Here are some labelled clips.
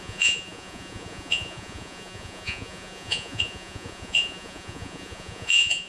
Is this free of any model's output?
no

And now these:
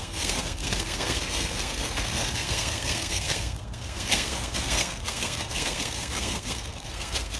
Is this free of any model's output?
no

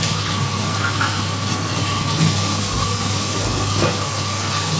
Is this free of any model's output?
no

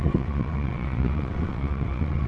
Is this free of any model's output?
no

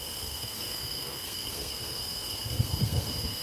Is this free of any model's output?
no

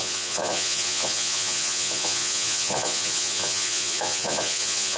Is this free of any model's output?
no